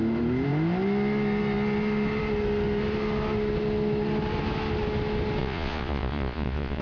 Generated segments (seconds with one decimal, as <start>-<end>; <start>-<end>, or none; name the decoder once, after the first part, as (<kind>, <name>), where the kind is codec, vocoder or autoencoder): 5.4-6.8 (vocoder, Vocos)